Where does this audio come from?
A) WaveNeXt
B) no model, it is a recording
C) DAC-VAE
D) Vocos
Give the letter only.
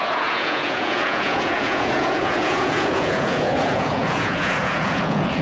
D